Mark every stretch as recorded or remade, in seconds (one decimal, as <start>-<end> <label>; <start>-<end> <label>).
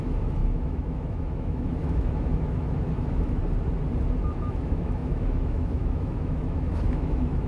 0.0-3.4 remade; 3.4-4.2 recorded; 4.2-7.5 remade